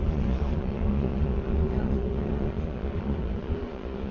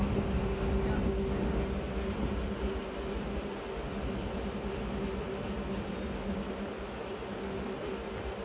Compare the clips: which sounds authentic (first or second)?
second